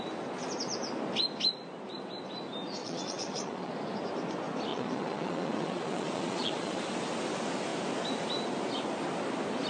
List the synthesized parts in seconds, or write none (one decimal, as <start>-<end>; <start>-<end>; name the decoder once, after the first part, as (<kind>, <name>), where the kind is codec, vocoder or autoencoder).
2.8-3.7 (vocoder, Vocos); 4.7-6.8